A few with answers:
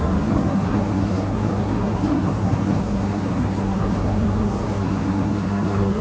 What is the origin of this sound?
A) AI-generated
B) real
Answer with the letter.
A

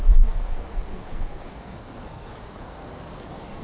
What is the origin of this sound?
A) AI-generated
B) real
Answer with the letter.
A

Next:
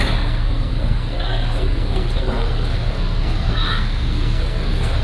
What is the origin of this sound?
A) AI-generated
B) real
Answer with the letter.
A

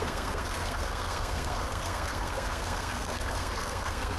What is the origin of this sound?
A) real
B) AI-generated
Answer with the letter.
B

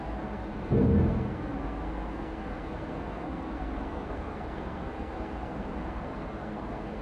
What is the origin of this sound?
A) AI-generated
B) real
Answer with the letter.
A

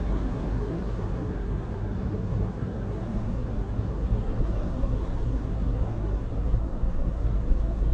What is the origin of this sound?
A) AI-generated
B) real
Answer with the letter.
A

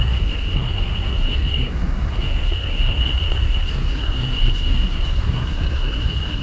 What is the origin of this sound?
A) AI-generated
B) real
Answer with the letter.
A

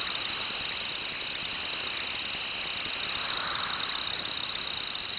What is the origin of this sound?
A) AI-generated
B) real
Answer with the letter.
B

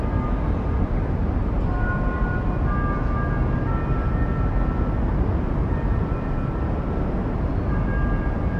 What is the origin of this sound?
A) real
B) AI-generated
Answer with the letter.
A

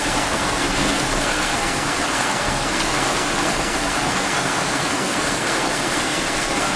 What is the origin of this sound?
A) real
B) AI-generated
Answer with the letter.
B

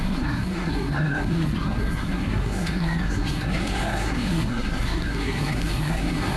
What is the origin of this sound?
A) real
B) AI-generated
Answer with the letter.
B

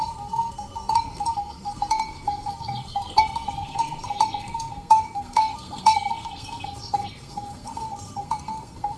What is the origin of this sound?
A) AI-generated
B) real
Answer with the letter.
A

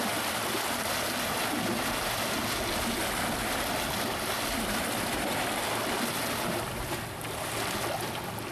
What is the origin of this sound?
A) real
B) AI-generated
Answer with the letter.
A